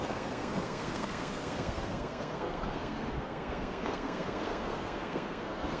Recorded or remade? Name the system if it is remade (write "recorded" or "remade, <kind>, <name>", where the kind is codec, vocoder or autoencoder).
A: remade, codec, SNAC